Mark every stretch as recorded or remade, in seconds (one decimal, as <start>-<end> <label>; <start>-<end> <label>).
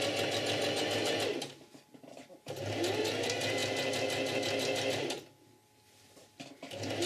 0.0-7.1 recorded